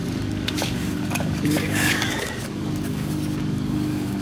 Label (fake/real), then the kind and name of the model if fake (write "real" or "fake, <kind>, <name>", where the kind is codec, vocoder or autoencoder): fake, codec, DAC